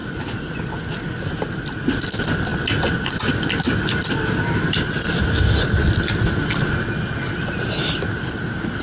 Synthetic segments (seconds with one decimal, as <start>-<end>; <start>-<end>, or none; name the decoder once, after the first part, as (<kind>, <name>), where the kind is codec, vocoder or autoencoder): none